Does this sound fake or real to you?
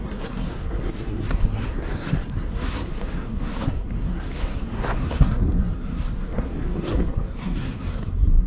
fake